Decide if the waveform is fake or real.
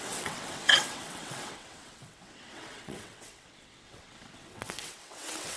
fake